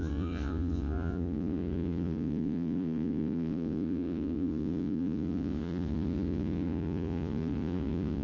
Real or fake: fake